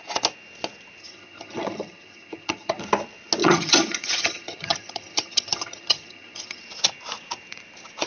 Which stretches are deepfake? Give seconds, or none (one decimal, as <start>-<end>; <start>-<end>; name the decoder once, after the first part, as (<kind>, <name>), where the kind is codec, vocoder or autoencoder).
1.0-2.8 (vocoder, HiFi-GAN); 3.4-6.6